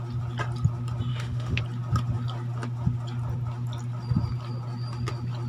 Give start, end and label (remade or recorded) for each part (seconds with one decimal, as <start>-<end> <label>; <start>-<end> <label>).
0.0-1.1 recorded; 1.1-1.6 remade; 1.6-5.5 recorded